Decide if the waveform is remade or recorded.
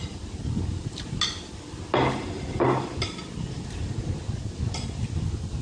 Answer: recorded